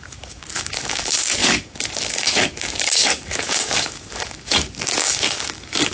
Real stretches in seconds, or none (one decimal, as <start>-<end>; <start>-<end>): none